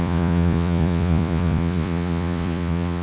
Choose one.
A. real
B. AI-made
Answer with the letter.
B